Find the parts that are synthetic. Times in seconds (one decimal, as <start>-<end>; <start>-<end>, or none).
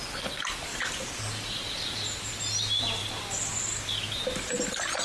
none